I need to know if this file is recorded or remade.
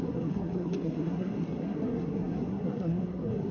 remade